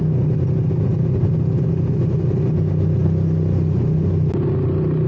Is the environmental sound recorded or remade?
recorded